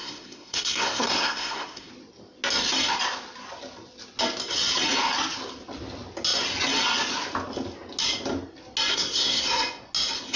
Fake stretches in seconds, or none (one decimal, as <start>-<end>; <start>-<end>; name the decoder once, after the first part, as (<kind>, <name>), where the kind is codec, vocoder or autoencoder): 0.0-1.9 (codec, SNAC); 8.9-9.4